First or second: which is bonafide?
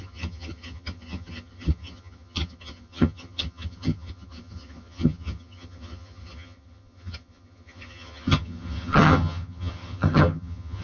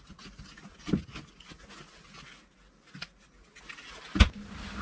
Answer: second